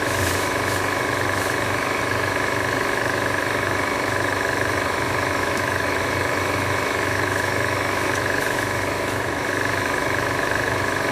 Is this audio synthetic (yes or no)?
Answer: yes